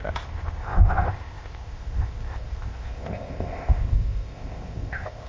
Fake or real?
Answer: fake